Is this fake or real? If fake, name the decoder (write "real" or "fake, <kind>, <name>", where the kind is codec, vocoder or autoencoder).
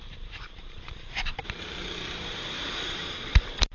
fake, vocoder, BigVGAN v2